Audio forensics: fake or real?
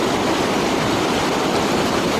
real